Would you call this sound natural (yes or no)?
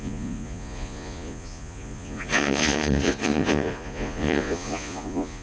no